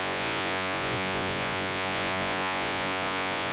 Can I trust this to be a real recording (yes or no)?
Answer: no